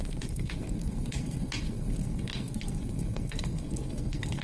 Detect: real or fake fake